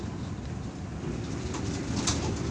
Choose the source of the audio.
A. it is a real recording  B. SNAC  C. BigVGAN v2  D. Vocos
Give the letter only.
A